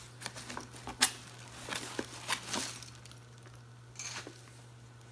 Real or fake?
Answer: real